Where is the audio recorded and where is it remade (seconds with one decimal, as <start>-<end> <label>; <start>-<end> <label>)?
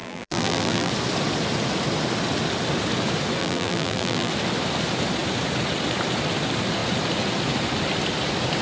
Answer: 0.0-0.9 remade; 0.9-3.4 recorded; 3.4-4.3 remade; 4.3-8.6 recorded